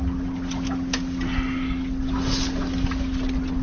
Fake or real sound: real